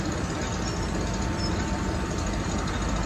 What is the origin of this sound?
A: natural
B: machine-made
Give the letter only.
A